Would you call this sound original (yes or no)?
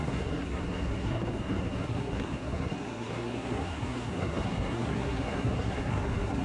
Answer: no